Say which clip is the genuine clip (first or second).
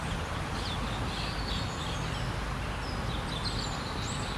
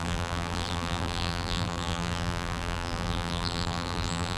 first